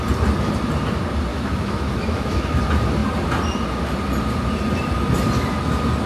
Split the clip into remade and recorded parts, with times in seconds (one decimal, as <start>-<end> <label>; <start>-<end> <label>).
0.0-1.3 recorded; 1.3-2.6 remade; 2.6-6.1 recorded